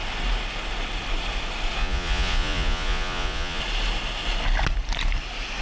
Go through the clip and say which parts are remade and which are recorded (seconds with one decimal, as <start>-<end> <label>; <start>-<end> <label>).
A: 0.0-1.8 recorded; 1.8-3.6 remade; 3.6-5.6 recorded